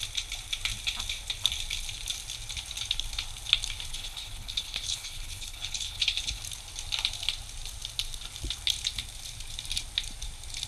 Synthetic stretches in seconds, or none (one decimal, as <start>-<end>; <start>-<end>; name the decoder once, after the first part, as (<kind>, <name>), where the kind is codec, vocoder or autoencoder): 3.9-6.4 (codec, HILCodec)